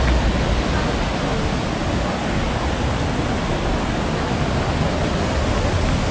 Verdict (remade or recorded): recorded